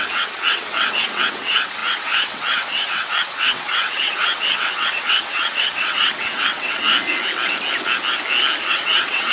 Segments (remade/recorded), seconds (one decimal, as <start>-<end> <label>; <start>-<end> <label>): 0.0-6.9 remade; 6.9-8.7 recorded; 8.7-9.3 remade